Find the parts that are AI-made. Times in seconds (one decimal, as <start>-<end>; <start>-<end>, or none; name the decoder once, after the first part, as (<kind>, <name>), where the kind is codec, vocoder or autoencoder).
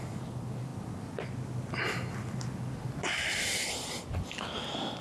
none